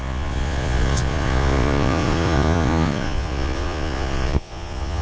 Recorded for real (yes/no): no